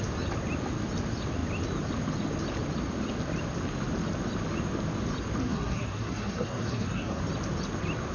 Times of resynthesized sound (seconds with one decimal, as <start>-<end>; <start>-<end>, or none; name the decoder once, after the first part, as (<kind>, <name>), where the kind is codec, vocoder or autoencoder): 5.4-7.2 (codec, SNAC)